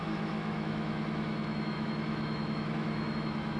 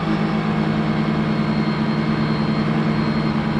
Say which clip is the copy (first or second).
first